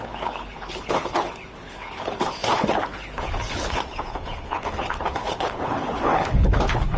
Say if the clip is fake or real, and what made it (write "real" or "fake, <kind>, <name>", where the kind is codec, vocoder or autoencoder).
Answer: fake, codec, HILCodec